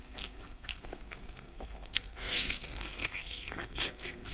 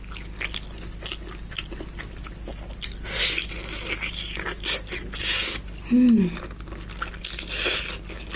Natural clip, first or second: second